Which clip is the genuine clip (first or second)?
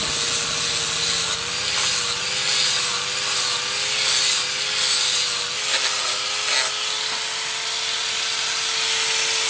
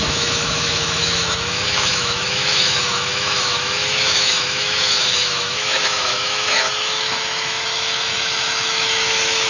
first